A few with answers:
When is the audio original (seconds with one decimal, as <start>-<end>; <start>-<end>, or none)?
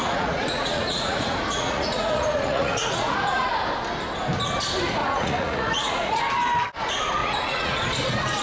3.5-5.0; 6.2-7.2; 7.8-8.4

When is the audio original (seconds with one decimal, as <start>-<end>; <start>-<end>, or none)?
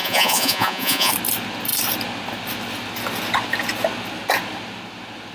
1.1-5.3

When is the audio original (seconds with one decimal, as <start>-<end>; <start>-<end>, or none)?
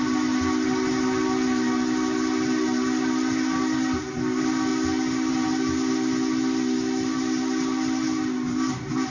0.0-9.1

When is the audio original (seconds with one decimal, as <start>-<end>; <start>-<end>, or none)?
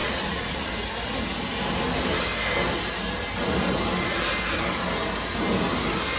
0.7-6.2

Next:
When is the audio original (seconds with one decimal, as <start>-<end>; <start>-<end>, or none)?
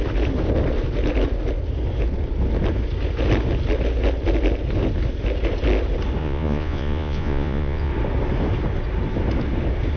0.0-6.2; 7.9-10.0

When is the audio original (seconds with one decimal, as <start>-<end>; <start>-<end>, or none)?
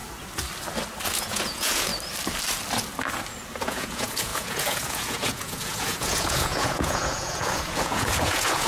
0.0-1.1; 1.9-3.6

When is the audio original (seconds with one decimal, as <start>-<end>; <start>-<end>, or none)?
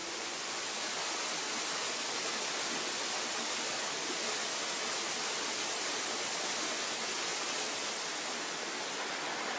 0.6-9.6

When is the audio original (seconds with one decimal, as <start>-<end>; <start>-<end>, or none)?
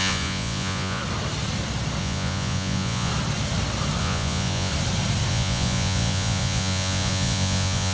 1.0-2.0; 3.1-4.0; 4.7-5.3